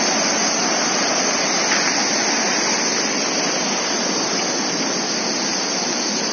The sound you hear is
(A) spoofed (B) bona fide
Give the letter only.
B